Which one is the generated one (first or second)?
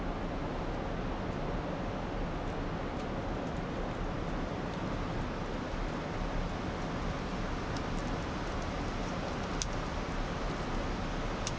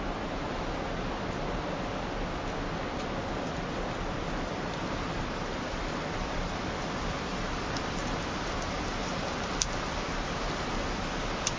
second